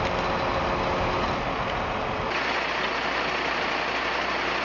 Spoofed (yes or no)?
no